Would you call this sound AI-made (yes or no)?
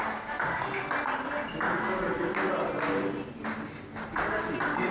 no